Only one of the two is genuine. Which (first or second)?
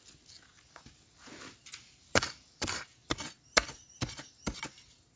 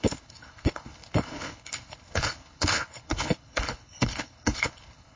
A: first